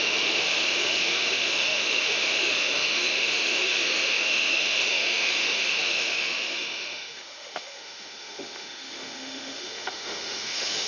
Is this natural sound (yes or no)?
no